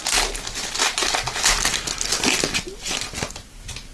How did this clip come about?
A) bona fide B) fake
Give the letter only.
A